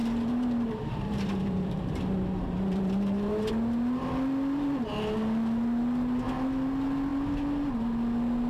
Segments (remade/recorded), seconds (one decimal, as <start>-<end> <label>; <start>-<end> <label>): 0.0-3.5 remade; 3.5-8.5 recorded